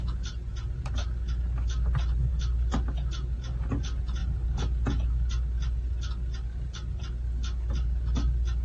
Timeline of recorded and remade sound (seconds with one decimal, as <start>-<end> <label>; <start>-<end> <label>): 0.0-8.6 recorded